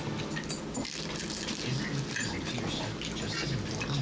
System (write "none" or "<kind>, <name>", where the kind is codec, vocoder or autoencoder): none